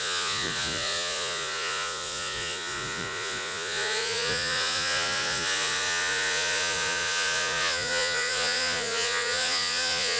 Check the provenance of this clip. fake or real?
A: fake